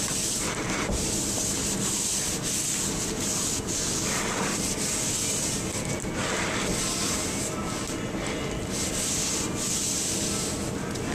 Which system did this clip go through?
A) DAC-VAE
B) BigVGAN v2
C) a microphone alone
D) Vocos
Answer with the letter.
C